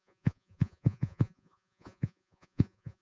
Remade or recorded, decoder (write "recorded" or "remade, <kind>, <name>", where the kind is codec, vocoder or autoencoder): remade, vocoder, Vocos